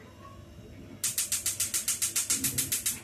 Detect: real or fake real